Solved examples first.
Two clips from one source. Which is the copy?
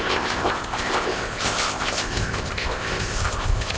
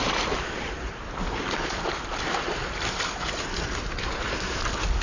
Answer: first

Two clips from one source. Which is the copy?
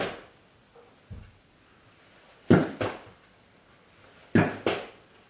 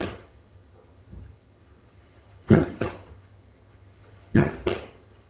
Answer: second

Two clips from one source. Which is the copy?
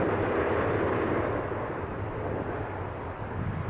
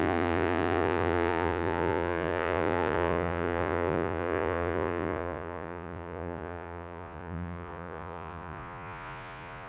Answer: second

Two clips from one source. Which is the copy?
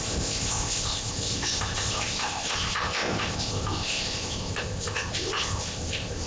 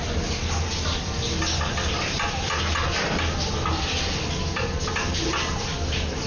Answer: first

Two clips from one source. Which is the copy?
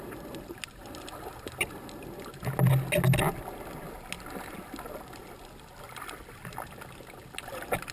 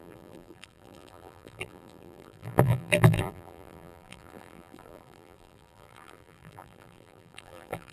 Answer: second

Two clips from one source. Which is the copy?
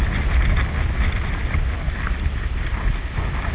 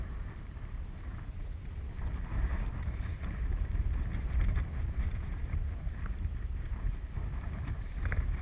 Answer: second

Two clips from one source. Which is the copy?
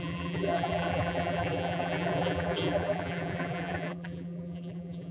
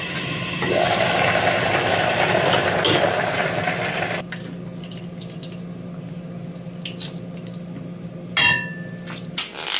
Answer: first